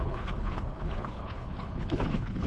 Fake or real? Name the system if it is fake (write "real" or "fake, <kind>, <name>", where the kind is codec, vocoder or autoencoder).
fake, codec, HILCodec